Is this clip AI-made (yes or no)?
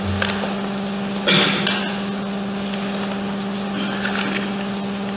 no